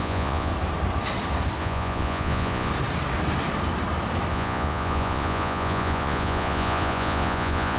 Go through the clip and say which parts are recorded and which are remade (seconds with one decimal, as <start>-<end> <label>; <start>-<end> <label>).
0.0-0.5 remade; 0.5-1.6 recorded; 1.6-2.7 remade; 2.7-4.3 recorded; 4.3-7.8 remade